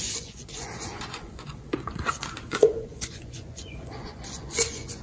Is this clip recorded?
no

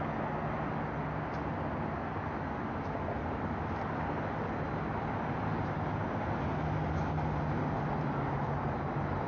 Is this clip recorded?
yes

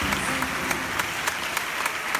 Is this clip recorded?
yes